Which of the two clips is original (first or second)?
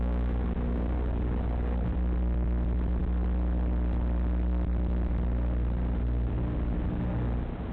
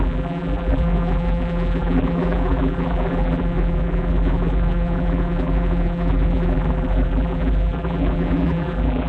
first